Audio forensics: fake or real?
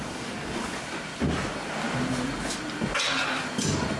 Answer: real